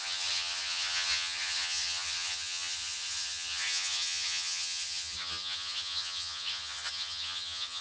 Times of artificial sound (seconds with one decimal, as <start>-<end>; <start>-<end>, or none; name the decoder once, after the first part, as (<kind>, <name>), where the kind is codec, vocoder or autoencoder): 0.0-7.8 (vocoder, HiFi-GAN)